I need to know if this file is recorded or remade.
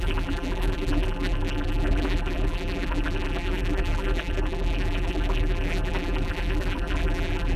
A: remade